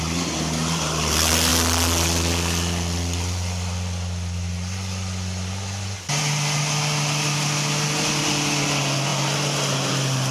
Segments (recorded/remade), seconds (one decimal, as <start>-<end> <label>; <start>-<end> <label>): 0.0-10.3 recorded